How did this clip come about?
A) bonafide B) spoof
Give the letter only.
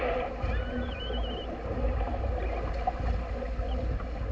A